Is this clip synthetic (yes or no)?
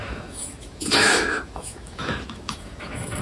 yes